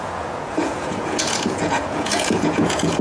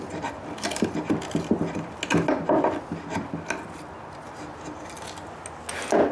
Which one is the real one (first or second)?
second